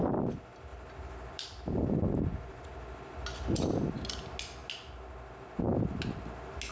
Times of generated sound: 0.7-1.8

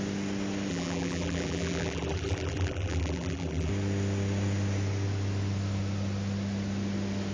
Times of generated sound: 0.7-3.7

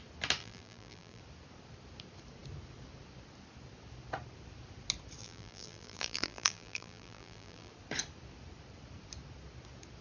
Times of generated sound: 0.4-1.2; 5.2-7.7